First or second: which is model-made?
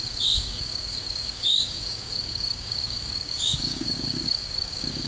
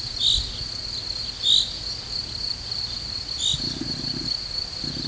first